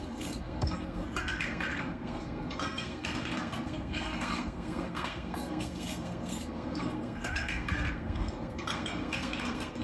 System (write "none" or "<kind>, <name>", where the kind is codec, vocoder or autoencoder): codec, SNAC